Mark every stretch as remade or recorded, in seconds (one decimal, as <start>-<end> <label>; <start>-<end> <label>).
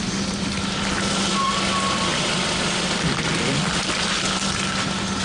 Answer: 0.0-5.2 recorded